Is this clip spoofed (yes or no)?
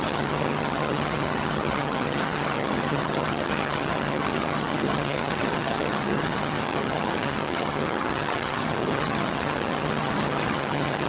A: yes